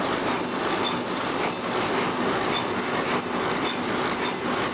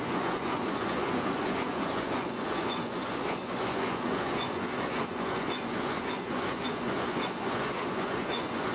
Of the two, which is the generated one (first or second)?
second